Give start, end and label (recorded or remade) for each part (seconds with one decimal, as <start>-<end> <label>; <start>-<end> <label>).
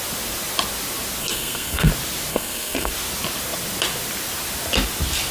0.0-1.2 recorded; 1.2-1.9 remade; 1.9-2.3 recorded; 2.3-2.9 remade; 2.9-5.3 recorded